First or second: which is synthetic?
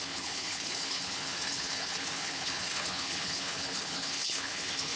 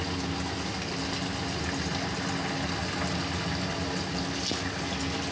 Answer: first